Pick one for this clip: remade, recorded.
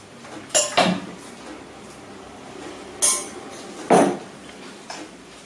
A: recorded